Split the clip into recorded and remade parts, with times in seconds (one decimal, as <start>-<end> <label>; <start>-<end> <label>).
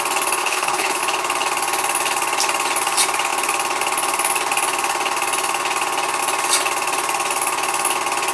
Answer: 0.0-0.4 recorded; 0.4-1.0 remade; 1.0-8.3 recorded